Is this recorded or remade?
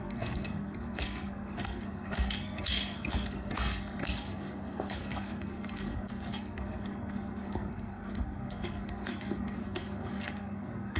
remade